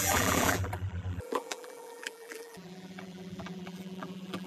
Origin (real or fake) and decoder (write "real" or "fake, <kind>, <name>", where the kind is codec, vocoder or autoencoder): fake, vocoder, BigVGAN v2